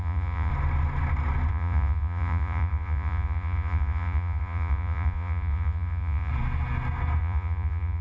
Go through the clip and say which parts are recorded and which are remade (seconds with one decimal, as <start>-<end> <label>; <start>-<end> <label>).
0.0-0.5 remade; 0.5-1.5 recorded; 1.5-6.3 remade; 6.3-7.2 recorded; 7.2-8.0 remade